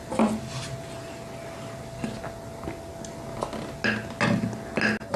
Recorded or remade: recorded